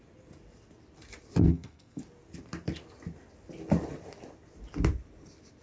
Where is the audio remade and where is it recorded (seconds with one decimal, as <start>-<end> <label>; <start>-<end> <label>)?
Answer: 0.0-1.4 recorded; 1.4-2.0 remade; 2.0-5.6 recorded